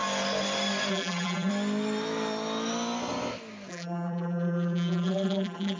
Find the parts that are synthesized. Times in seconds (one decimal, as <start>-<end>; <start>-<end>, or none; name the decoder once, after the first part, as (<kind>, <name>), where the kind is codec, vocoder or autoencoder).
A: 0.9-1.5 (vocoder, BigVGAN v2); 3.7-5.8